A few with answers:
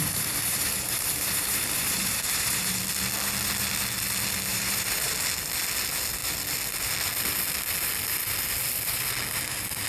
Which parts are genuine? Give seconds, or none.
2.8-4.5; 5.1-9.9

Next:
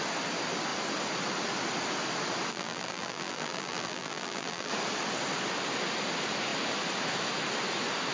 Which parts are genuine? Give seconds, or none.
0.0-2.5; 4.7-8.1

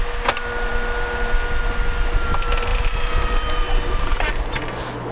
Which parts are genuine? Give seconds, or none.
0.0-2.7; 4.3-5.1

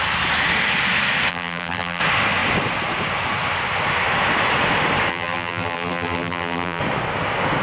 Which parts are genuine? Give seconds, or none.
0.0-1.3; 2.0-5.1; 6.8-7.6

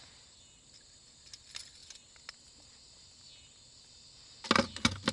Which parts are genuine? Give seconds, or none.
0.0-5.1